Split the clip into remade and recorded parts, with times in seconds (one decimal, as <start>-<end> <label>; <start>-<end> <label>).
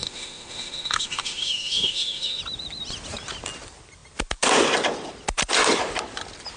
0.0-2.4 remade; 2.4-6.6 recorded